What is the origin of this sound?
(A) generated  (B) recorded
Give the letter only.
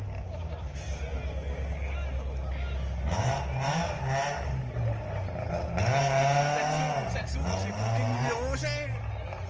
B